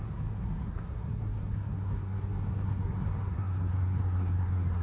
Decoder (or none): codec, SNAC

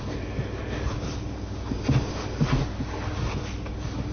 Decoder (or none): none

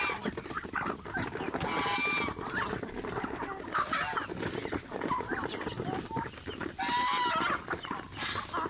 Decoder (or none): none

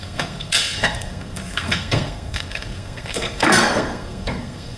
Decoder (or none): codec, SNAC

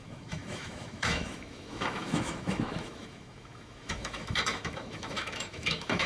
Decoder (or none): autoencoder, DAC-VAE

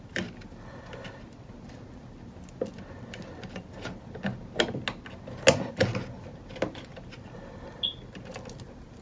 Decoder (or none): none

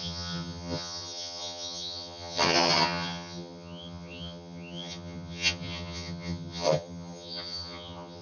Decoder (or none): vocoder, HiFi-GAN